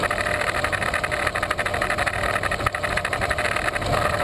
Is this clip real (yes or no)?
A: yes